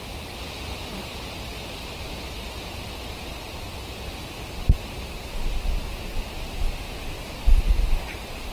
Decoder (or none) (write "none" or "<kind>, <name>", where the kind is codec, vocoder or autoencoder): none